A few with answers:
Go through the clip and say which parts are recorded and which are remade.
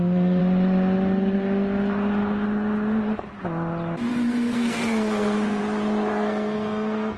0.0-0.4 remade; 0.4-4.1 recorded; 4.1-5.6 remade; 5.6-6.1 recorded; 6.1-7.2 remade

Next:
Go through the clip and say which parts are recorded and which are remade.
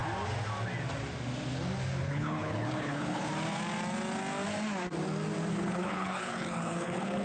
0.0-2.0 recorded; 2.0-3.3 remade; 3.3-5.5 recorded; 5.5-7.2 remade